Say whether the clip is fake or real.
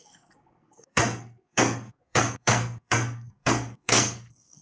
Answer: fake